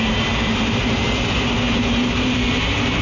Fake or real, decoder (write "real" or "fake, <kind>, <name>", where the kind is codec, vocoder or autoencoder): fake, vocoder, BigVGAN v2